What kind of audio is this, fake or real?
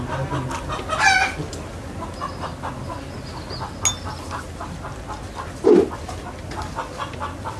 real